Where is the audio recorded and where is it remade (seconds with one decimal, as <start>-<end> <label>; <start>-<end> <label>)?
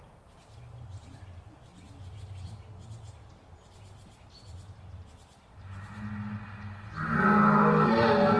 0.0-8.4 recorded